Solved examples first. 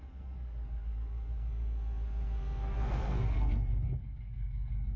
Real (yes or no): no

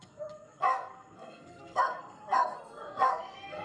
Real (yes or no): no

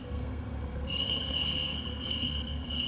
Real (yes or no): no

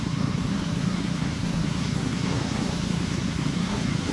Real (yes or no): no